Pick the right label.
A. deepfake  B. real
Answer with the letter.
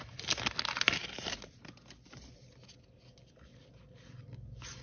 B